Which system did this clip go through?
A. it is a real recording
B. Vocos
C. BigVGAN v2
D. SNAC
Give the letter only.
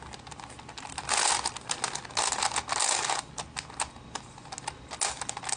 A